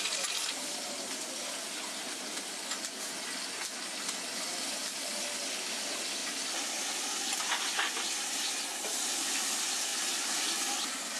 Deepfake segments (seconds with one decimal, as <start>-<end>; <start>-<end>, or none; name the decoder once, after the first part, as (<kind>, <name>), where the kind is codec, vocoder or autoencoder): 6.2-9.3 (vocoder, BigVGAN v2); 9.9-10.6